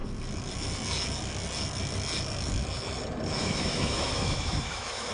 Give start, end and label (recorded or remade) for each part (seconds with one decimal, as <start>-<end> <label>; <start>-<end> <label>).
0.0-3.4 recorded; 3.4-5.1 remade